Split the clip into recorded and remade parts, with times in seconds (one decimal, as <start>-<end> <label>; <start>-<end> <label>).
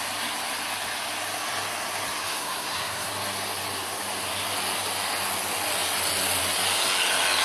0.0-2.2 recorded; 2.2-3.1 remade; 3.1-7.4 recorded